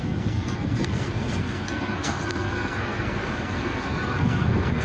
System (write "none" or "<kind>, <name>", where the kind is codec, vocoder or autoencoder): codec, SNAC